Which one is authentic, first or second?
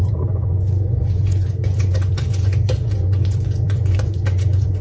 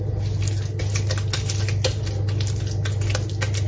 second